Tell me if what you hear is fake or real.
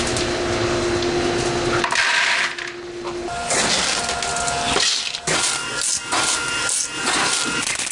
real